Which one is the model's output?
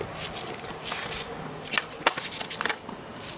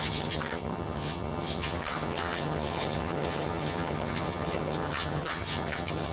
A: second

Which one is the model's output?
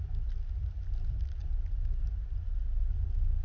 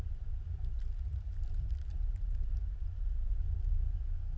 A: second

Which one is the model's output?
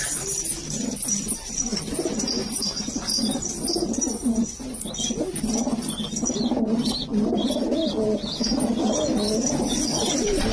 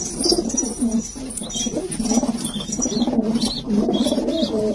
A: second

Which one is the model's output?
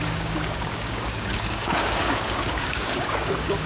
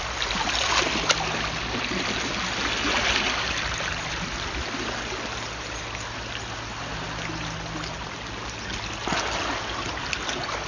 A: first